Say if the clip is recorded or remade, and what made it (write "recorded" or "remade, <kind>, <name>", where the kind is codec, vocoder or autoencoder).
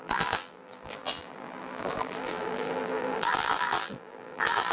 remade, vocoder, BigVGAN v2